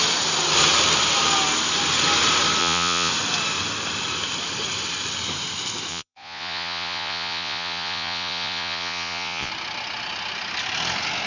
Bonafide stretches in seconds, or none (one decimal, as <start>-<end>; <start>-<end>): 0.0-2.6; 3.1-5.9; 9.5-11.3